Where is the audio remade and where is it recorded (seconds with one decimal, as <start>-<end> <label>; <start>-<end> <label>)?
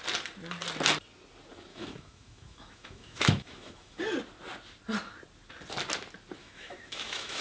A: 0.0-1.7 recorded; 1.7-4.0 remade; 4.0-6.4 recorded; 6.4-7.4 remade